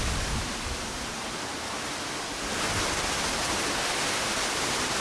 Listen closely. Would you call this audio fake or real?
fake